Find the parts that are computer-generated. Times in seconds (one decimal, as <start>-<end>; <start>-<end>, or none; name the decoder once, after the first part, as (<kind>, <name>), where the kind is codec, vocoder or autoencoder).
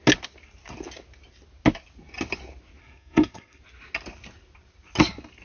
2.8-3.6 (codec, SNAC)